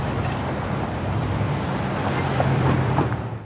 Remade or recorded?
remade